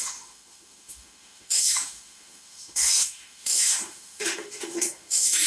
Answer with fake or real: fake